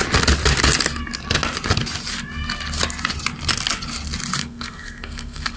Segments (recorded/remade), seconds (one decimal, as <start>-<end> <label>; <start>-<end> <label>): 0.0-4.4 recorded; 4.4-5.6 remade